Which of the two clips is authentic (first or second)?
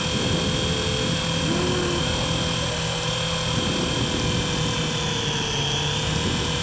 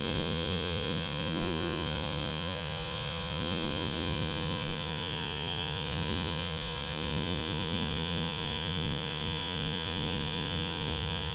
first